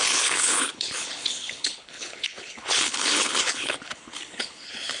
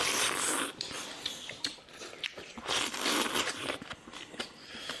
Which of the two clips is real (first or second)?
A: second